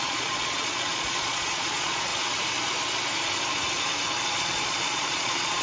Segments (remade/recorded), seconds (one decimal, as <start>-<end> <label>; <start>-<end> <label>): 0.0-2.1 remade; 2.1-4.4 recorded; 4.4-5.6 remade